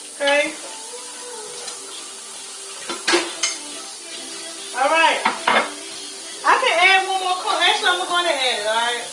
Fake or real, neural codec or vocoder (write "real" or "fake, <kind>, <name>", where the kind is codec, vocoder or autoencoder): real